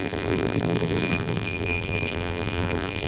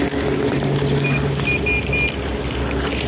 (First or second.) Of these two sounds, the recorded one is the second